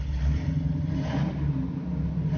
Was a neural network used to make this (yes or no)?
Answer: no